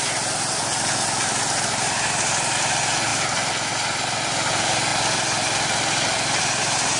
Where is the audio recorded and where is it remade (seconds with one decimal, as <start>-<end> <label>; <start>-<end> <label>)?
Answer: 0.0-7.0 recorded

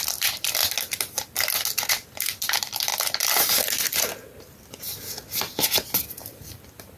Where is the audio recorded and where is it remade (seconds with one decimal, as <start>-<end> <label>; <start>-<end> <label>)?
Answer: 0.0-0.6 remade; 0.6-1.9 recorded; 1.9-2.9 remade; 2.9-6.0 recorded; 6.0-7.0 remade